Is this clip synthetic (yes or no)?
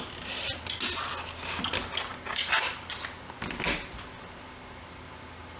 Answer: no